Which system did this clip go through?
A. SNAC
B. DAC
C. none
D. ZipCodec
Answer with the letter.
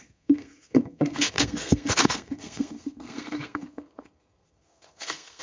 A